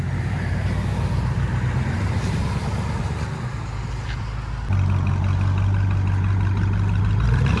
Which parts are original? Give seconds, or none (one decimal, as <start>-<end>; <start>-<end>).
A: 2.6-7.0